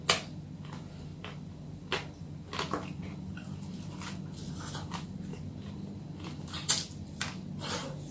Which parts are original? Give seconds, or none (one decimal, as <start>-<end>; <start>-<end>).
0.0-8.1